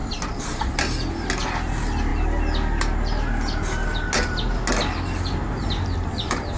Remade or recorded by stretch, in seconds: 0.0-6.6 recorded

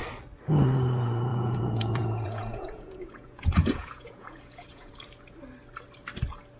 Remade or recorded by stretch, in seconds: 0.0-1.3 recorded; 1.3-4.9 remade; 4.9-6.6 recorded

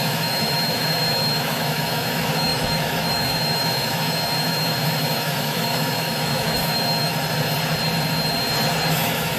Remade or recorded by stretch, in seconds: 0.0-7.1 remade; 7.1-8.9 recorded; 8.9-9.4 remade

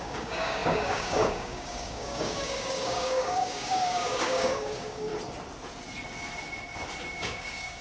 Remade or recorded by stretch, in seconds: 0.0-5.1 remade; 5.1-7.2 recorded; 7.2-7.8 remade

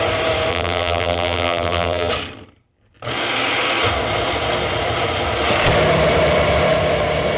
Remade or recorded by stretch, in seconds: 0.0-0.5 recorded; 0.5-2.1 remade; 2.1-7.4 recorded

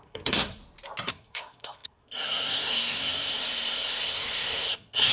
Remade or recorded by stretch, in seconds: 0.0-0.6 remade; 0.6-1.1 recorded; 1.1-5.1 remade

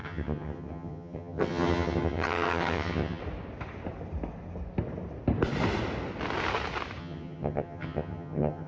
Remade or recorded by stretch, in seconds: 0.0-3.2 remade; 3.2-7.0 recorded; 7.0-8.7 remade

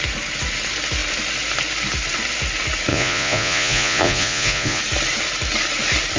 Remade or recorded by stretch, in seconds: 0.0-2.9 recorded; 2.9-4.8 remade; 4.8-6.2 recorded